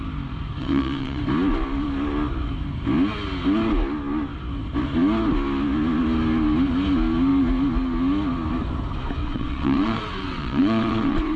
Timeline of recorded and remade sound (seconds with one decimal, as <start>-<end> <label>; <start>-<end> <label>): 0.0-0.6 recorded; 0.6-1.2 remade; 1.2-9.2 recorded; 9.2-11.4 remade

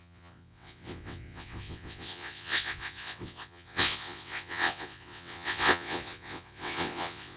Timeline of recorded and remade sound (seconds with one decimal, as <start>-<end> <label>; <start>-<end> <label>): 0.0-7.4 remade

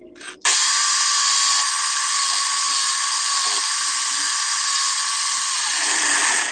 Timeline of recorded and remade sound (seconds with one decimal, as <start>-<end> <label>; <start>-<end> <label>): 0.0-6.5 recorded